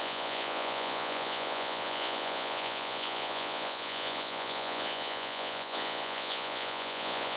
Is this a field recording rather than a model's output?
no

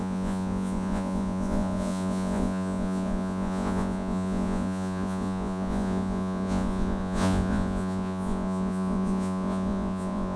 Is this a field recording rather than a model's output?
no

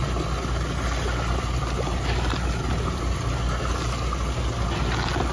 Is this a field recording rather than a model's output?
yes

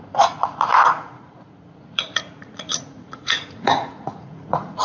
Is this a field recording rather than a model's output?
no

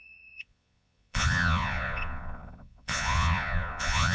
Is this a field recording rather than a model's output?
no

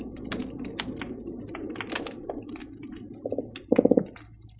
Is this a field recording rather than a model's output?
yes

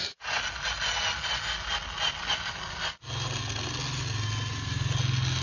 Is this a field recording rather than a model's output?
yes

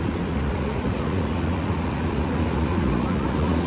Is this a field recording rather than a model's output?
no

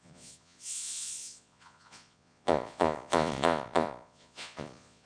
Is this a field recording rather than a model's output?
no